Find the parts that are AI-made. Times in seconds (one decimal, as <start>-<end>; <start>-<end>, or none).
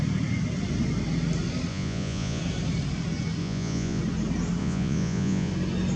1.7-2.4; 3.4-4.0; 4.6-5.5